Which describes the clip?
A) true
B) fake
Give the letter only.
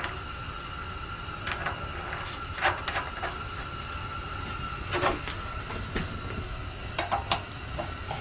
A